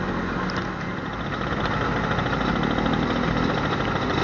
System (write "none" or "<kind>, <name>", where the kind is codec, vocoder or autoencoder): none